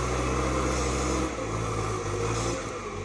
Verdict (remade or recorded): recorded